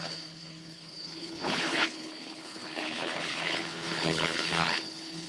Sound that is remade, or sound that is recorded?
remade